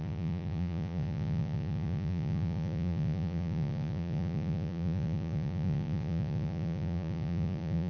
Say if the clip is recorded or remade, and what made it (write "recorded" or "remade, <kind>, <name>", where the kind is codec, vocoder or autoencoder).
remade, vocoder, Vocos